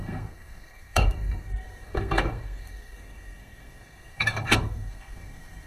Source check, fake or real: fake